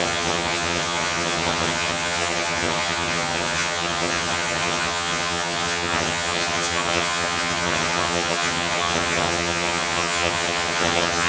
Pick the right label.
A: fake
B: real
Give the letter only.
A